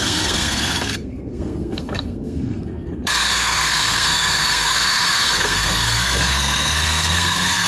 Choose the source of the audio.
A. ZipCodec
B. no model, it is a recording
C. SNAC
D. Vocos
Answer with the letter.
C